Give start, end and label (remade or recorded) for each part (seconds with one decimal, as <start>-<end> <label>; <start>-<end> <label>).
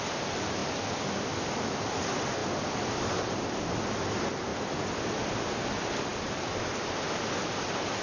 0.0-2.4 recorded; 2.4-3.0 remade; 3.0-4.5 recorded; 4.5-5.2 remade; 5.2-6.1 recorded; 6.1-6.9 remade; 6.9-8.0 recorded